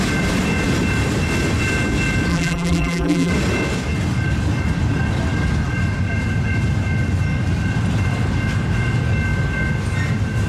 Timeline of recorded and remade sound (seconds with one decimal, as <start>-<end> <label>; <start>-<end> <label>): 0.0-2.3 recorded; 2.3-3.3 remade; 3.3-10.5 recorded